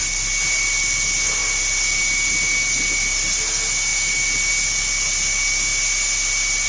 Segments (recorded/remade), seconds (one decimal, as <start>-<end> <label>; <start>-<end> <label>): 0.0-6.7 recorded